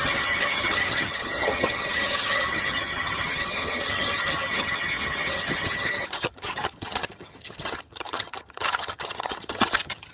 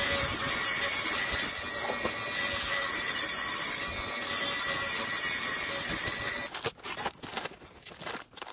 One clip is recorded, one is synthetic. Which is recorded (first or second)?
second